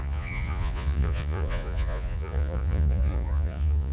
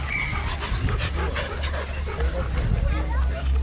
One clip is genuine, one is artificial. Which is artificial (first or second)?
first